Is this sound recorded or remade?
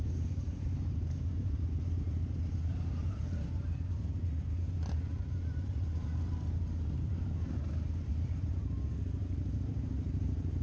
remade